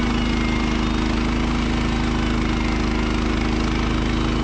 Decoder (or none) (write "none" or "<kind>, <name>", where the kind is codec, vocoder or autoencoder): none